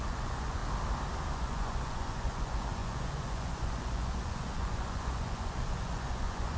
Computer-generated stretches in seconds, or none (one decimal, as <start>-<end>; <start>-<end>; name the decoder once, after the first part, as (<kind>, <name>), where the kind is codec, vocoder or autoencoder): 0.0-0.6 (vocoder, Vocos); 1.3-6.6